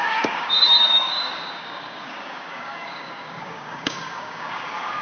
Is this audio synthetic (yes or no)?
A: yes